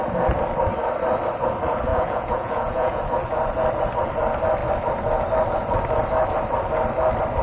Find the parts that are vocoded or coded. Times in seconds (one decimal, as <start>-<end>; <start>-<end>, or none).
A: 1.9-3.0